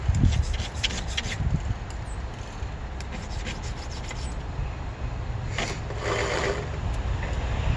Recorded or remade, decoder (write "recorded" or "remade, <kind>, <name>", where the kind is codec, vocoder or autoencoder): recorded